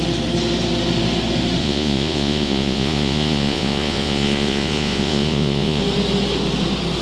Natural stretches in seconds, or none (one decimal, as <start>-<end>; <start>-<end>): 0.0-1.6; 5.8-7.0